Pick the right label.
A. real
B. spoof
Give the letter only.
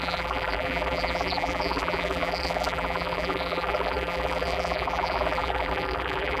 B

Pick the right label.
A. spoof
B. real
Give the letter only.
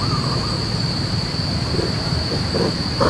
A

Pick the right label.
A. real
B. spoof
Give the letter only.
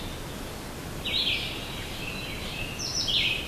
A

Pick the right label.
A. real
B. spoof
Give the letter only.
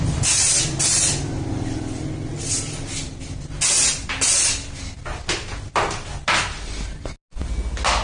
A